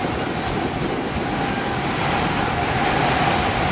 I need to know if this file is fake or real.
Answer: real